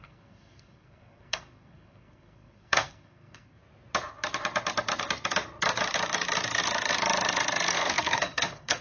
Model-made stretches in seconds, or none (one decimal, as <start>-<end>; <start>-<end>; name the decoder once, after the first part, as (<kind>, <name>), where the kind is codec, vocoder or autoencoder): 0.0-3.6 (codec, SNAC); 7.7-8.8